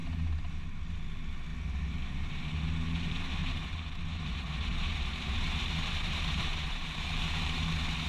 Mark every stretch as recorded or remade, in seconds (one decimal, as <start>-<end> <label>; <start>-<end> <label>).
0.0-3.4 recorded; 3.4-8.1 remade

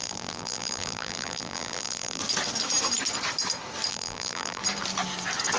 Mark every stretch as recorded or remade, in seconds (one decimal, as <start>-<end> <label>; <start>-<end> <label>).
0.0-2.2 remade; 2.2-3.9 recorded; 3.9-4.6 remade; 4.6-5.6 recorded

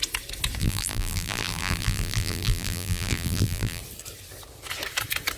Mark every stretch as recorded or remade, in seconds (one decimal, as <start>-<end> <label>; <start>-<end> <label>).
0.0-0.6 recorded; 0.6-3.8 remade; 3.8-5.4 recorded